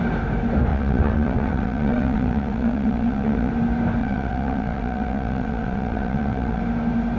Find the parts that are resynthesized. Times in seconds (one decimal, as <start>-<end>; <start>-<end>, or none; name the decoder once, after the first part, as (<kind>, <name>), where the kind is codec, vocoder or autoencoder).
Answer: 0.7-3.5 (vocoder, WaveNeXt); 4.0-6.6